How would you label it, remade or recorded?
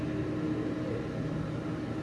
recorded